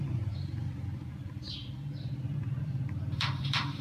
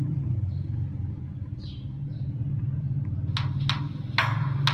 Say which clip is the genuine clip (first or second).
second